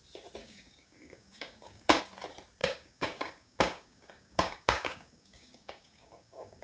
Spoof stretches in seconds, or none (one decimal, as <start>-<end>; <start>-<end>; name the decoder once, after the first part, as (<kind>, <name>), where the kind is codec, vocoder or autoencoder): 0.4-2.0 (codec, DAC); 2.6-6.6